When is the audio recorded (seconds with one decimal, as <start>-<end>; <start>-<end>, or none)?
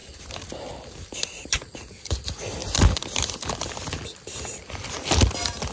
0.0-5.7